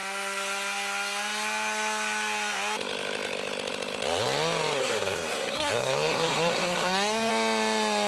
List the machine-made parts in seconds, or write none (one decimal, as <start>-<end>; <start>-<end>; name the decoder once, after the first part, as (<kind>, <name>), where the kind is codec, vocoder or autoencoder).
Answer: 4.8-7.3 (codec, SNAC)